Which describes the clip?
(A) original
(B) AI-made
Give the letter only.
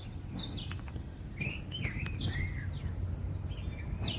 A